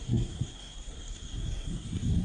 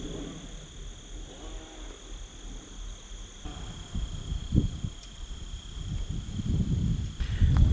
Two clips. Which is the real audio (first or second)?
second